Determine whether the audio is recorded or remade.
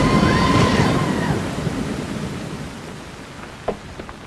recorded